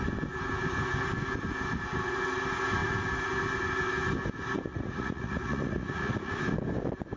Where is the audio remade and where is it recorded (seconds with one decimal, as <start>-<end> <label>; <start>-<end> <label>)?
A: 0.0-4.7 recorded; 4.7-6.4 remade; 6.4-7.2 recorded